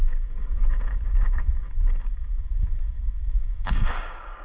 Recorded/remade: remade